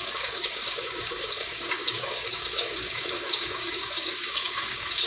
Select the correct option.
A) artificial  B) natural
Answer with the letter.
A